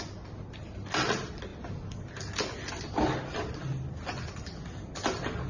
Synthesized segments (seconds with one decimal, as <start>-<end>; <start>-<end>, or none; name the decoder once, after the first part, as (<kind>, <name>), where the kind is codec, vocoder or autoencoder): none